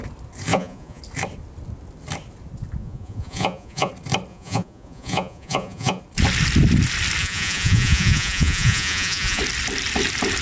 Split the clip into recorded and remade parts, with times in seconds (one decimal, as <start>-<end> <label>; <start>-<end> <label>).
0.0-0.5 recorded; 0.5-1.0 remade; 1.0-2.8 recorded; 2.8-3.9 remade; 3.9-4.3 recorded; 4.3-6.0 remade; 6.0-7.2 recorded; 7.2-9.4 remade; 9.4-10.4 recorded